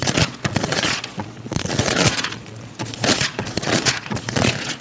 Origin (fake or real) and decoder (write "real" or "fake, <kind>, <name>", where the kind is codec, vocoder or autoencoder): fake, vocoder, Vocos